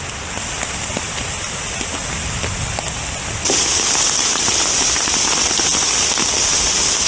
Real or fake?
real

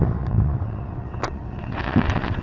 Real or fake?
fake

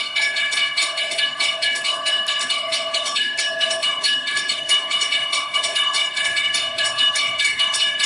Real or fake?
fake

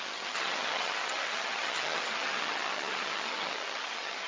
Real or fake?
fake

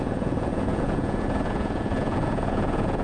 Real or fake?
fake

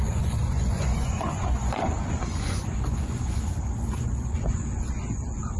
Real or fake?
fake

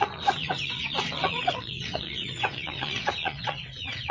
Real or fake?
fake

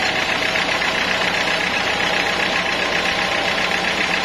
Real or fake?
fake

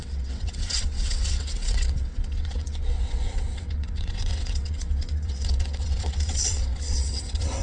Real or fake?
fake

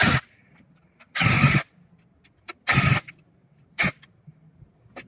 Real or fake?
real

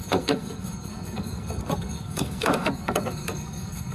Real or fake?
fake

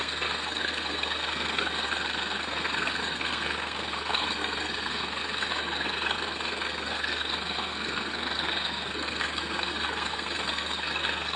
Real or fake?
fake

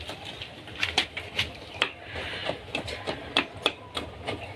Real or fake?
fake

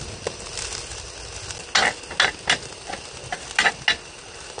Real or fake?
real